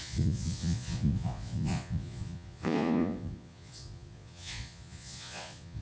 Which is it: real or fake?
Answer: fake